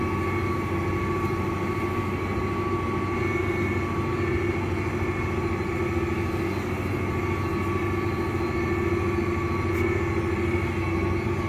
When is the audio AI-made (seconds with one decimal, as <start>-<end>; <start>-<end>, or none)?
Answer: none